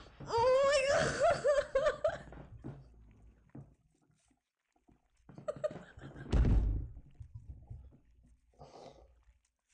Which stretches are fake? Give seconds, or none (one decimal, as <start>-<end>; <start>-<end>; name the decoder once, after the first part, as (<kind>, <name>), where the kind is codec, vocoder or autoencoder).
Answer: none